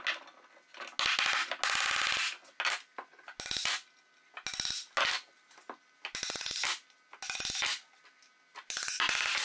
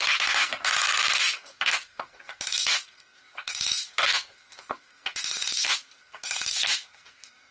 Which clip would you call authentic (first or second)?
first